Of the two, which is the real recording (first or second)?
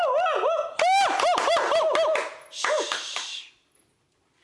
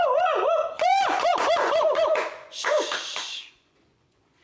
first